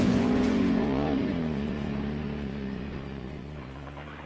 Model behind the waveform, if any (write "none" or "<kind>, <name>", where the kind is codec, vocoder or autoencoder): vocoder, Vocos